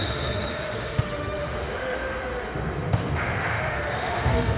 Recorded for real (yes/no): no